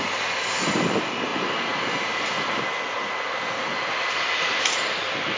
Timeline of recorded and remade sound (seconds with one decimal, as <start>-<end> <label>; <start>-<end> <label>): 0.0-5.4 recorded